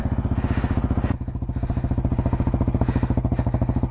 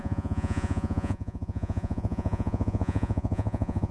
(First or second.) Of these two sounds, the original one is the first